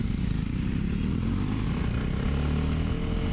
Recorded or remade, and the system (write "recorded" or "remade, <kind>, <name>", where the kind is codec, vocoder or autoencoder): recorded